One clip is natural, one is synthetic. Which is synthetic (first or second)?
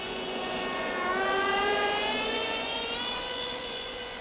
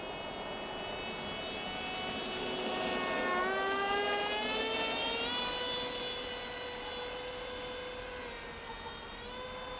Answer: first